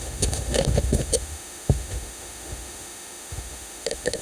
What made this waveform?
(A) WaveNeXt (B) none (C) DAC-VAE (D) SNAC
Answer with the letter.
C